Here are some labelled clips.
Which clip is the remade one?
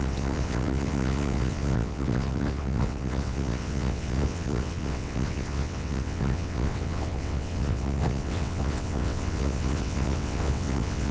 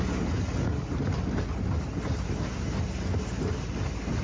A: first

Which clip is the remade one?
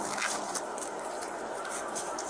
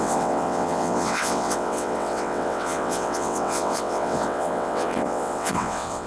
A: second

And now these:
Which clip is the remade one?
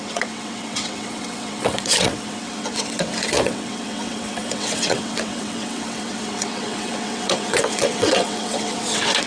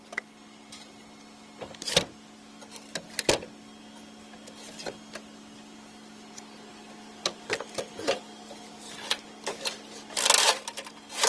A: first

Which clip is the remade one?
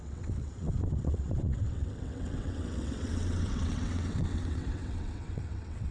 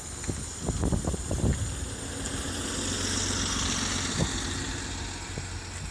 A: first